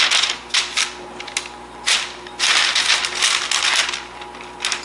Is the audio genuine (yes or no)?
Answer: yes